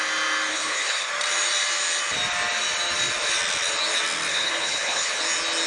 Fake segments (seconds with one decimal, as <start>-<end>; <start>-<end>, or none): 0.5-1.1; 4.3-5.2